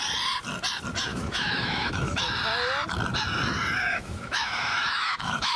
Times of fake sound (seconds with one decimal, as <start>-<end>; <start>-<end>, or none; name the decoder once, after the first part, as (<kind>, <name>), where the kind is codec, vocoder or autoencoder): 1.1-2.2 (autoencoder, DAC-VAE); 3.9-5.6